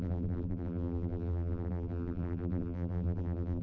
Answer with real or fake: fake